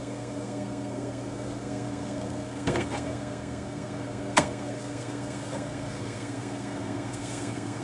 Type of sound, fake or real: fake